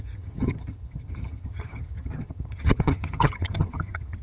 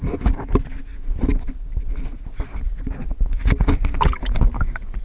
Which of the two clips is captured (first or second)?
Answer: second